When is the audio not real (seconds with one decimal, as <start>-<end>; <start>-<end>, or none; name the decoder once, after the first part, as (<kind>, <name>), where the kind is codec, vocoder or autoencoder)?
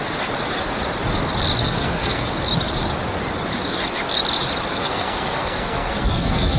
1.6-2.3 (codec, SNAC); 4.7-6.6